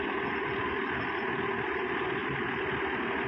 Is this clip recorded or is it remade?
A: recorded